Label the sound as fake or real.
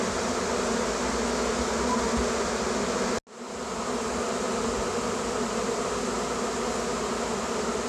real